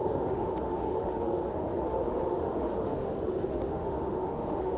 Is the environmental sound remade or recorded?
remade